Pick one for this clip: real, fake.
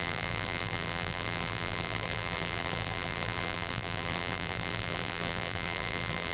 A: fake